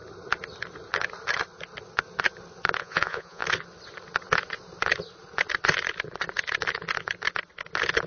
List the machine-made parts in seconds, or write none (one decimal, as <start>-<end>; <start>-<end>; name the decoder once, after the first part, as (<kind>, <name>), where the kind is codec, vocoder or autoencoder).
2.8-3.4 (vocoder, Vocos)